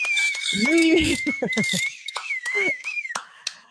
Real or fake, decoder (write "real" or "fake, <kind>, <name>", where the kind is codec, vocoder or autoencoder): fake, autoencoder, DAC-VAE